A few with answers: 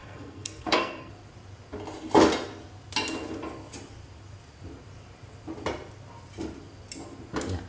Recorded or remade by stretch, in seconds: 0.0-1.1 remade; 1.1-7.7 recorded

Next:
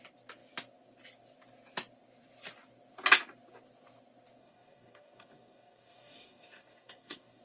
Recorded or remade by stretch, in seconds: 0.0-4.4 recorded; 4.4-7.4 remade

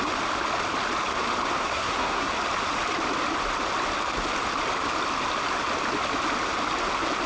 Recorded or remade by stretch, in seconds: 0.0-1.6 recorded; 1.6-2.3 remade; 2.3-7.3 recorded

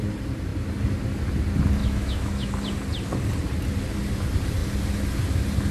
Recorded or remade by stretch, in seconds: 0.0-1.8 recorded; 1.8-2.5 remade; 2.5-5.7 recorded

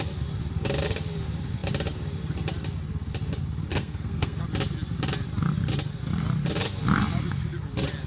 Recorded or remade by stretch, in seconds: 0.0-3.7 recorded; 3.7-4.4 remade; 4.4-8.1 recorded

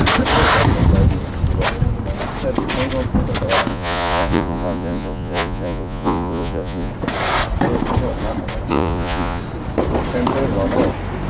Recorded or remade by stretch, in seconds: 0.0-3.7 recorded; 3.7-6.9 remade; 6.9-8.7 recorded; 8.7-9.4 remade; 9.4-11.3 recorded